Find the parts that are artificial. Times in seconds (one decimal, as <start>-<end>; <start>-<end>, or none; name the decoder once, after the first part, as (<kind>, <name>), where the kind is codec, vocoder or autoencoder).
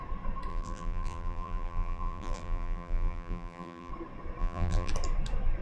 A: 0.5-3.9 (vocoder, BigVGAN v2); 4.4-4.9